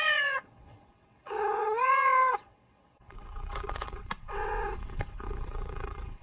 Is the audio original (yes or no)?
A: no